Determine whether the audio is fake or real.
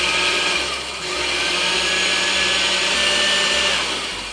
real